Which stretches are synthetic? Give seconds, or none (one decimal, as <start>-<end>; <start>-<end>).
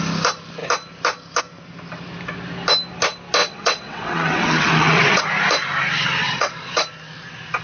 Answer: 3.4-5.2; 6.2-6.8